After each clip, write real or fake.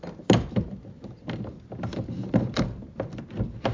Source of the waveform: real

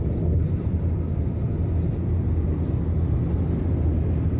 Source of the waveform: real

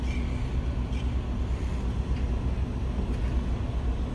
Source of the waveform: real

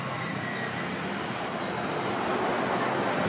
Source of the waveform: real